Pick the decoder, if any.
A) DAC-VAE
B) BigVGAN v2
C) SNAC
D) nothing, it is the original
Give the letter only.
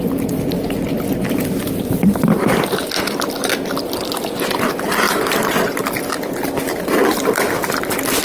B